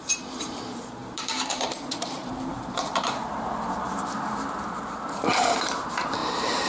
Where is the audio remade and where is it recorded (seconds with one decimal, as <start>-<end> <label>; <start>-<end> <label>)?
0.0-6.7 remade